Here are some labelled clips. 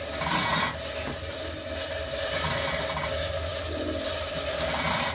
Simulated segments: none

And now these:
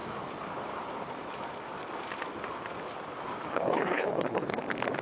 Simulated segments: 3.4-4.6